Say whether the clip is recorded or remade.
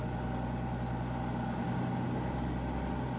recorded